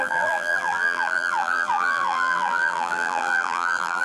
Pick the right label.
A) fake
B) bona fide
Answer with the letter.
A